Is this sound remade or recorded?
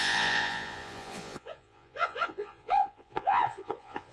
remade